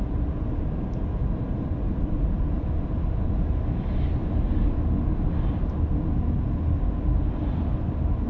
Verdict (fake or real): real